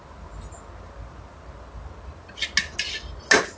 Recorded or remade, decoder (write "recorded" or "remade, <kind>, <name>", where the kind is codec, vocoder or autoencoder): recorded